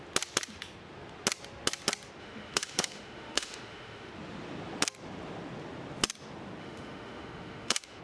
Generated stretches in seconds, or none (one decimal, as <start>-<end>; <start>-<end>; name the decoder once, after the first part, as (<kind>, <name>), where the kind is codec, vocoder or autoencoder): 2.2-4.1 (autoencoder, DAC-VAE); 6.6-8.0